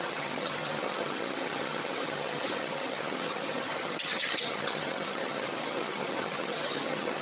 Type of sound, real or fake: fake